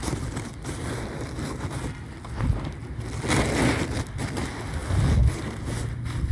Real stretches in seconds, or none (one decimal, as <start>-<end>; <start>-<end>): 0.0-6.3